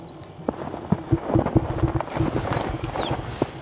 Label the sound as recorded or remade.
recorded